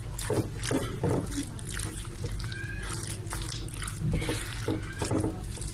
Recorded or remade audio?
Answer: recorded